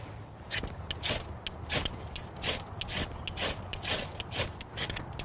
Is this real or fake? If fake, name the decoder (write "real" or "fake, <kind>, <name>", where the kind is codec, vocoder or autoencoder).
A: real